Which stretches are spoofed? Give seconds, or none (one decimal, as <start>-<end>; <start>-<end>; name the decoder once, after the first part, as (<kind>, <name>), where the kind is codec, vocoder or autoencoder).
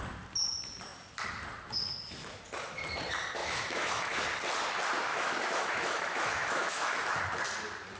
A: 3.4-4.2 (autoencoder, DAC-VAE); 5.1-7.0